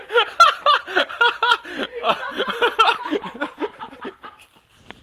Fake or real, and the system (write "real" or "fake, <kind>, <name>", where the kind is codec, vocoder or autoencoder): real